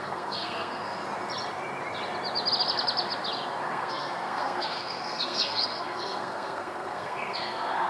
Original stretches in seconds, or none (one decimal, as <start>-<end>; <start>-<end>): 1.0-3.6